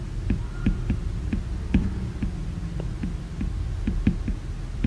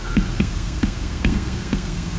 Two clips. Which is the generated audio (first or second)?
second